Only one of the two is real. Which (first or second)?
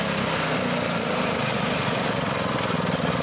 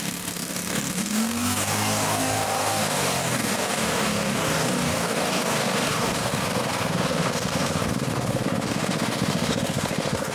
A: first